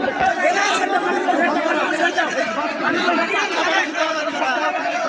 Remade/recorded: remade